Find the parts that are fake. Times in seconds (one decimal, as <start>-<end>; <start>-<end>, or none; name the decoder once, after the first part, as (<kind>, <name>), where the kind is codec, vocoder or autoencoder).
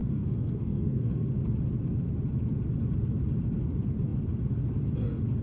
0.0-1.3 (codec, SNAC)